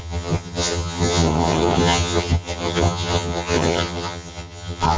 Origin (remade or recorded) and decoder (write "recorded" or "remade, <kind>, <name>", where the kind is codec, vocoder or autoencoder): remade, vocoder, HiFi-GAN